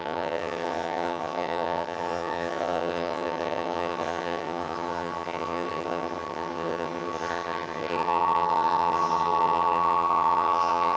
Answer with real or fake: fake